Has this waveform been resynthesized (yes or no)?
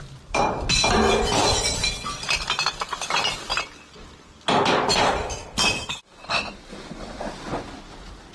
no